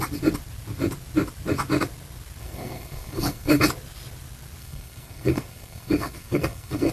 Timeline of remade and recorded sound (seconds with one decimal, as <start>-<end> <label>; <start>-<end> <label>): 0.0-2.4 recorded; 2.4-3.6 remade; 3.6-4.6 recorded; 4.6-6.9 remade